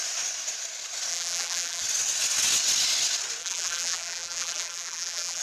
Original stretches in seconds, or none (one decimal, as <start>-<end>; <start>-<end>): 0.0-1.1; 1.8-3.4

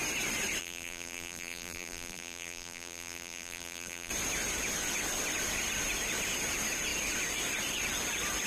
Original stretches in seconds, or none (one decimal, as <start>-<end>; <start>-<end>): 0.0-0.6; 4.1-8.5

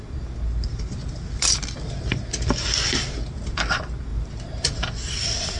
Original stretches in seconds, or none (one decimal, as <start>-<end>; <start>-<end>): 0.0-4.1; 4.8-5.6

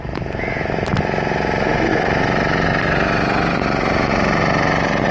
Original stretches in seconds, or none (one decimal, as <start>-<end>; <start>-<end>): 0.0-1.9

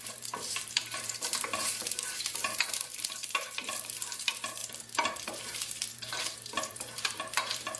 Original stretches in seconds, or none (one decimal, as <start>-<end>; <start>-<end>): none